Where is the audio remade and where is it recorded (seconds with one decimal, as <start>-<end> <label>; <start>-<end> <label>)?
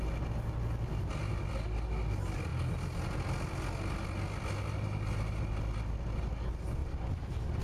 0.0-7.6 recorded